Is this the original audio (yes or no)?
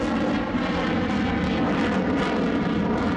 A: yes